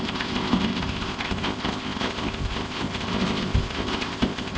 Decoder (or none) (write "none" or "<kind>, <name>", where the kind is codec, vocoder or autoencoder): codec, ZipCodec